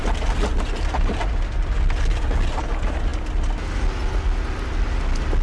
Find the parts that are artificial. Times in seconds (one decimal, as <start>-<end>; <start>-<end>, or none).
none